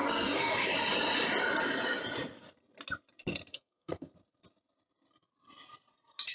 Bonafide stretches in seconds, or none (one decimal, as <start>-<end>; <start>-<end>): 0.7-3.5; 4.1-6.3